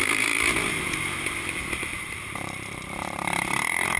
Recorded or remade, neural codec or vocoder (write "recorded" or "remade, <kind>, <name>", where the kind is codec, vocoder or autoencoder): remade, vocoder, BigVGAN v2